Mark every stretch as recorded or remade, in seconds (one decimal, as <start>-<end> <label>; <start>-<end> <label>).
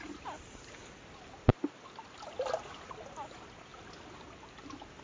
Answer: 0.0-5.0 recorded